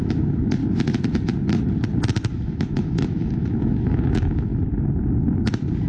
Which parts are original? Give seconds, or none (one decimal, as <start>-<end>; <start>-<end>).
0.6-2.3; 4.5-5.4